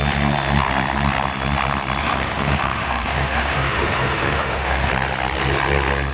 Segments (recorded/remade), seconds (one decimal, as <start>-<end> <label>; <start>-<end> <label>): 0.0-2.0 recorded; 2.0-4.9 remade; 4.9-6.1 recorded